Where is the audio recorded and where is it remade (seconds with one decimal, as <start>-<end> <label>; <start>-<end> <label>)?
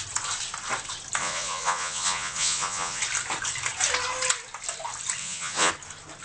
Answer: 0.0-1.2 recorded; 1.2-3.0 remade; 3.0-5.2 recorded; 5.2-5.7 remade; 5.7-6.2 recorded